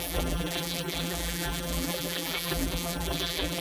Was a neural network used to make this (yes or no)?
yes